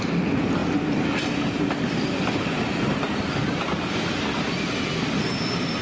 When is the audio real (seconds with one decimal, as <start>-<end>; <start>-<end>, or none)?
0.0-5.8